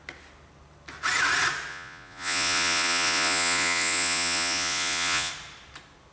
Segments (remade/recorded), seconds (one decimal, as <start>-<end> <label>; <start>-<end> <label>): 0.0-1.7 recorded; 1.7-5.3 remade; 5.3-6.1 recorded